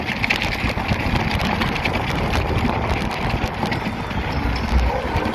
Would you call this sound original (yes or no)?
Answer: yes